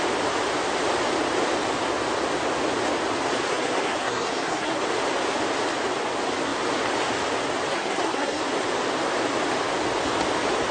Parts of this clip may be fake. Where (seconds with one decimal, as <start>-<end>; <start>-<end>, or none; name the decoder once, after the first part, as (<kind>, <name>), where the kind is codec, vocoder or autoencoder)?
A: 3.5-4.8 (codec, SNAC); 7.7-8.4